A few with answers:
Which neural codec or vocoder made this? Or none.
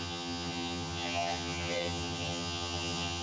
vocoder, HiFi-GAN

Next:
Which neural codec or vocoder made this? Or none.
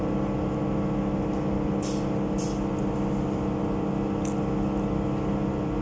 none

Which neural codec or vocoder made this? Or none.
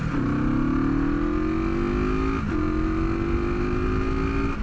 none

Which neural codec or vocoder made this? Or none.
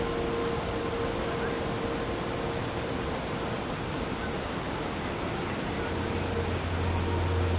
none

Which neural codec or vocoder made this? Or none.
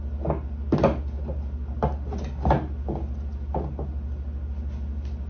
none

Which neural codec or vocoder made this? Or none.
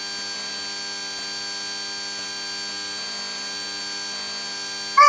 none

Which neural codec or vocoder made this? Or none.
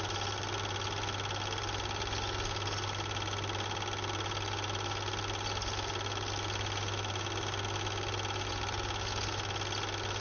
none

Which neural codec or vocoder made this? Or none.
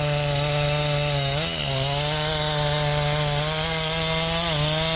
none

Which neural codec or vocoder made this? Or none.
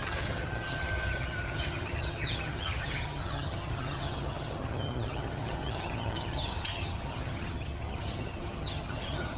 vocoder, HiFi-GAN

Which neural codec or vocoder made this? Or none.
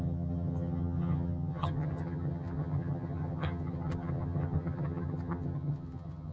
vocoder, HiFi-GAN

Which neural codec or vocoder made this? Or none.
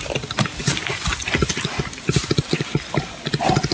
none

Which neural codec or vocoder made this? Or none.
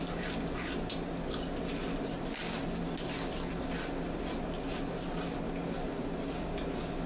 none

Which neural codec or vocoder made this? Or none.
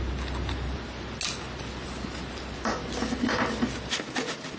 none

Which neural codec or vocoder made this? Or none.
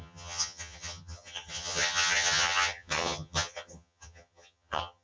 vocoder, HiFi-GAN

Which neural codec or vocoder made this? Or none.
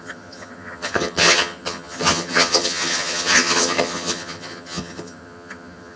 vocoder, HiFi-GAN